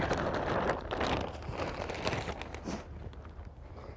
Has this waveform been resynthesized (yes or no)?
no